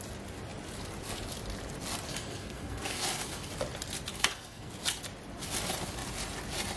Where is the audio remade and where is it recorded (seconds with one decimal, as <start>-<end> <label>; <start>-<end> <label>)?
0.0-2.1 recorded; 2.1-3.5 remade; 3.5-4.1 recorded; 4.1-4.7 remade; 4.7-6.8 recorded